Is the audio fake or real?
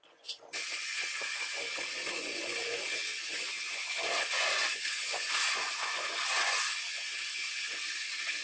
fake